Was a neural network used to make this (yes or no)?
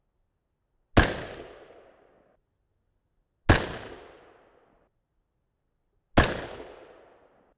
no